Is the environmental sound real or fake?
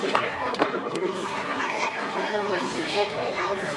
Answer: fake